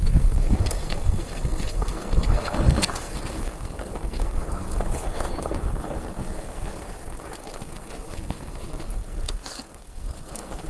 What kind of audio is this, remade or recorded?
remade